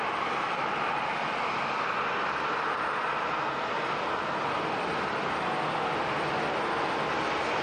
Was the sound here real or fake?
real